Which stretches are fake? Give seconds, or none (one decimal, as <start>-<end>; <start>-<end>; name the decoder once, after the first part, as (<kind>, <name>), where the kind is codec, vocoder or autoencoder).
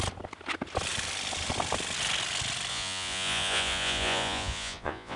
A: 2.7-5.2 (vocoder, Vocos)